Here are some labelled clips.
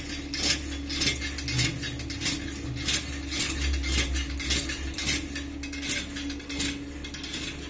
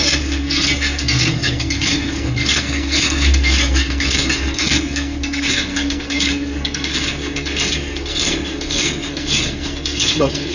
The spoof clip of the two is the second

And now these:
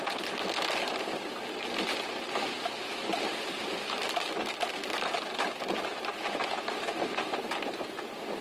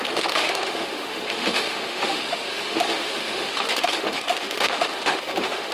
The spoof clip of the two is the second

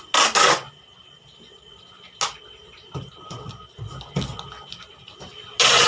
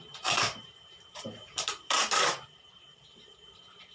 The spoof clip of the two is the second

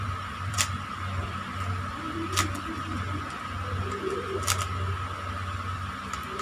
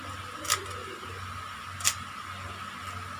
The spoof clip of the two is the first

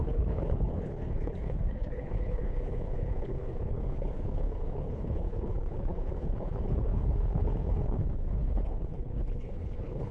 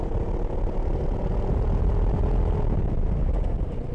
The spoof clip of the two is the first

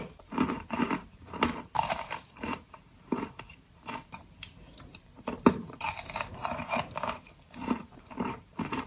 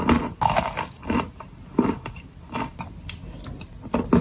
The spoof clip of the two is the first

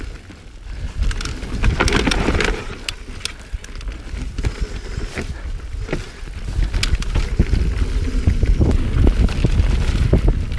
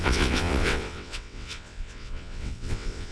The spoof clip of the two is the second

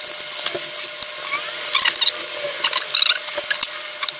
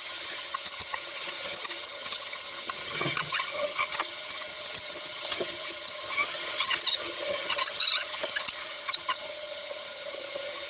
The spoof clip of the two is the second